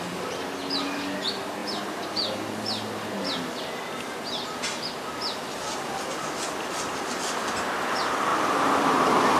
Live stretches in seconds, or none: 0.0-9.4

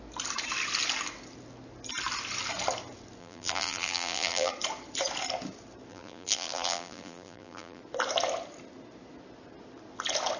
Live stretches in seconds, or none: 0.0-3.2; 4.5-5.9; 7.8-10.4

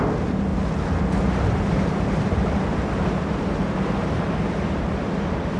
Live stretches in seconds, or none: 0.5-1.0

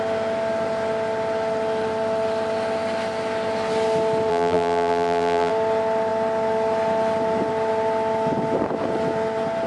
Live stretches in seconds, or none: 0.0-4.3; 5.5-9.7

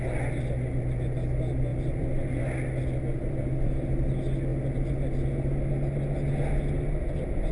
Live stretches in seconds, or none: 0.0-1.7; 2.4-3.1; 3.9-7.5

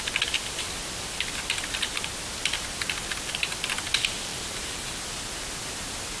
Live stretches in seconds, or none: 0.0-4.3; 5.0-6.2

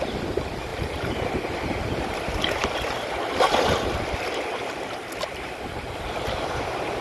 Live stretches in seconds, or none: 0.0-0.7; 1.3-7.0

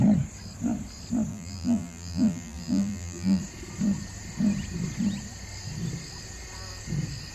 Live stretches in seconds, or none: 0.0-1.3; 3.4-7.3